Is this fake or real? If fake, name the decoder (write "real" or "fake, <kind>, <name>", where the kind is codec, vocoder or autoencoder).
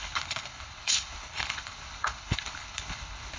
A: fake, codec, HILCodec